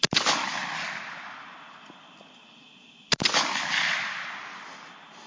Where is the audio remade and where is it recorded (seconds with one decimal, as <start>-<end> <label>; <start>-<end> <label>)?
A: 0.0-5.3 recorded

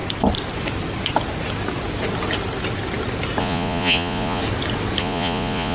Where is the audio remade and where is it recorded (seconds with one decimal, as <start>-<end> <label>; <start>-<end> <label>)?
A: 0.0-3.4 recorded; 3.4-4.4 remade; 4.4-5.0 recorded; 5.0-5.7 remade